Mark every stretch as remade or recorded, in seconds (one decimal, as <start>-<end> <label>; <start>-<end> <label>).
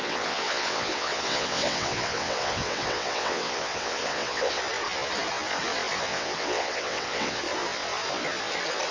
0.0-4.6 remade; 4.6-6.1 recorded; 6.1-7.4 remade; 7.4-8.9 recorded